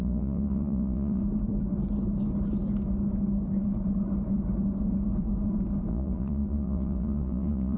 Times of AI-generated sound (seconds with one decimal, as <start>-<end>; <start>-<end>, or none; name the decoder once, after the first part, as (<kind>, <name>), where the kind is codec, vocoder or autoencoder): 0.0-1.2 (vocoder, Vocos); 5.9-7.8